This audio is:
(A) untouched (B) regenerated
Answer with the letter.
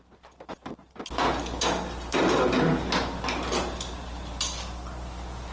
A